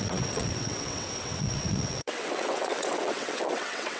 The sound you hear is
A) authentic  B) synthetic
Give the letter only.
B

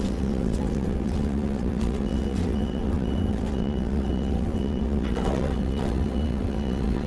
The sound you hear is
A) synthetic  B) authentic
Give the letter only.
A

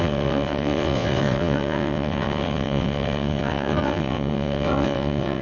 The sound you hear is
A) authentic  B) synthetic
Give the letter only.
B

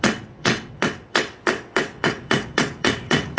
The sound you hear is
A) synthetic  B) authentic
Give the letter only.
A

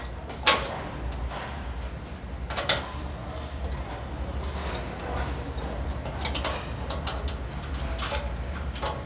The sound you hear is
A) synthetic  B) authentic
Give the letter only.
B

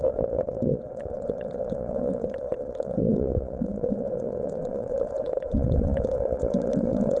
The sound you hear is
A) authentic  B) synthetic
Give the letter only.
B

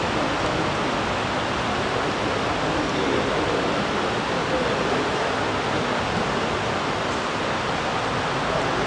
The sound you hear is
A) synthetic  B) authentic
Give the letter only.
B